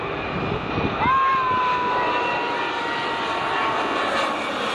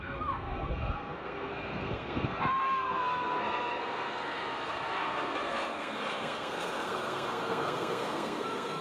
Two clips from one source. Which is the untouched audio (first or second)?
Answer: first